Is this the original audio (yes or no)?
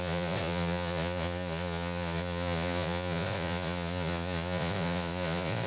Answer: no